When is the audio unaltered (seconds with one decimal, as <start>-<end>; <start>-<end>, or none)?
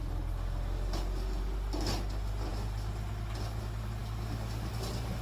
0.0-5.2